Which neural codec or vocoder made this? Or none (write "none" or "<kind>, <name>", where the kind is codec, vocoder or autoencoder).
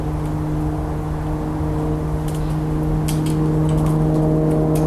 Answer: none